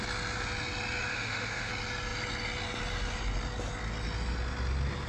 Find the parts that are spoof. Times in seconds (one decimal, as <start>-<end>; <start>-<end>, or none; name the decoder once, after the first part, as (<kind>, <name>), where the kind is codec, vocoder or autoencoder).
1.1-1.7 (autoencoder, DAC-VAE)